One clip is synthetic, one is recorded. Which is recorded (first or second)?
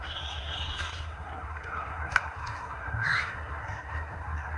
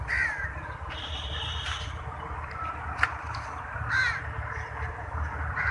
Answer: second